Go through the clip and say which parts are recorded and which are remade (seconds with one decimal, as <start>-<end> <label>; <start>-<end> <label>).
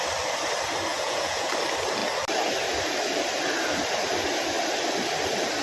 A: 0.0-0.9 recorded; 0.9-1.5 remade; 1.5-5.6 recorded